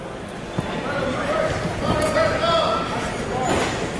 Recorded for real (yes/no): yes